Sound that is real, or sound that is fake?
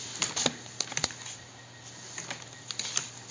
real